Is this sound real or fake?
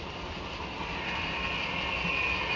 real